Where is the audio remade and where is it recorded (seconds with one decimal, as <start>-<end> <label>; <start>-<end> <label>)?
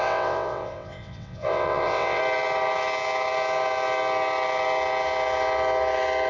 0.0-2.2 remade; 2.2-6.3 recorded